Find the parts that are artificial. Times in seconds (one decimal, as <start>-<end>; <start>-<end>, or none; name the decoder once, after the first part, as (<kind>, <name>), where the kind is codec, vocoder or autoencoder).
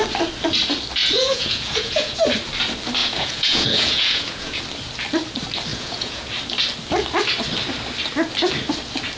1.0-2.2 (vocoder, Vocos); 3.0-4.6; 5.7-6.3